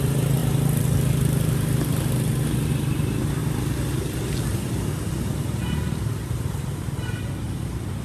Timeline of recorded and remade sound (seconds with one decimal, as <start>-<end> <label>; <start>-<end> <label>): 0.0-4.5 recorded; 4.5-5.0 remade; 5.0-5.9 recorded; 5.9-6.5 remade; 6.5-8.0 recorded